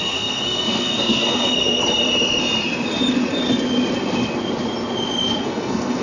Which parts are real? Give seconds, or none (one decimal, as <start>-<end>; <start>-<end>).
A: 1.8-5.4